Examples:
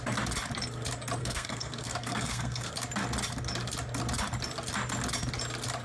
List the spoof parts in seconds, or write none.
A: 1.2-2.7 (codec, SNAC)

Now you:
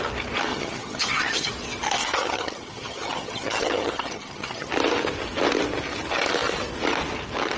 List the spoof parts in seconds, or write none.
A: 0.5-1.5 (vocoder, HiFi-GAN); 2.0-4.7

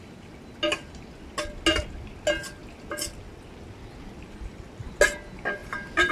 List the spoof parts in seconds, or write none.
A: 5.6-6.1 (vocoder, BigVGAN v2)

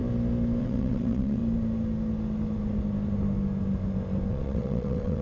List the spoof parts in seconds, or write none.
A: 0.6-1.4 (vocoder, WaveNeXt); 4.3-5.2

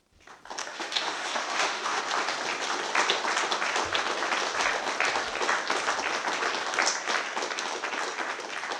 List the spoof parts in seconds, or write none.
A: 0.6-2.0 (autoencoder, DAC-VAE)